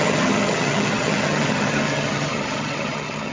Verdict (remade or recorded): remade